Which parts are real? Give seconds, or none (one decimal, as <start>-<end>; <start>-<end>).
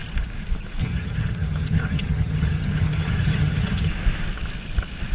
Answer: 0.0-0.8; 3.9-5.1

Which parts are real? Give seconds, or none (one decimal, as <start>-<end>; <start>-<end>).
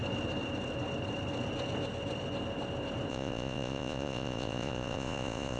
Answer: 0.0-3.1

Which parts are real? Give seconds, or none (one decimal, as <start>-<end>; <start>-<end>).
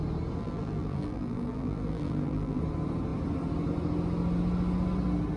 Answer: 0.0-0.4; 2.6-5.4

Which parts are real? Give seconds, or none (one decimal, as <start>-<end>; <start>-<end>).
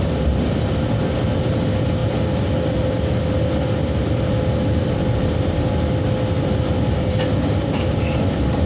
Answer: 0.0-8.7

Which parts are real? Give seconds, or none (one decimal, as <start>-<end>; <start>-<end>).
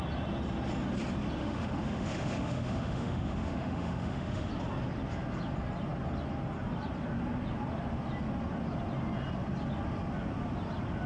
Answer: 0.0-1.4; 4.5-11.1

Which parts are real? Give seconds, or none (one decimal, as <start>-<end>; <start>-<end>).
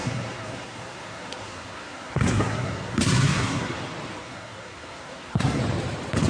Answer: 3.8-4.2; 5.6-6.3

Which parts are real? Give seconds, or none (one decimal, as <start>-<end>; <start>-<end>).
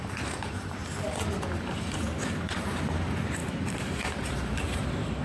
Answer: 0.8-1.4